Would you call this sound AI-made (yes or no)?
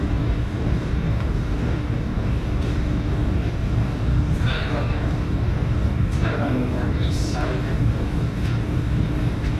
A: yes